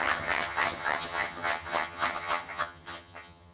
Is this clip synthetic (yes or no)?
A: yes